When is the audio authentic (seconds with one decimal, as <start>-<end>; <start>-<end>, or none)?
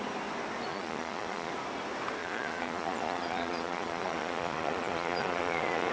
0.0-0.7; 1.5-2.2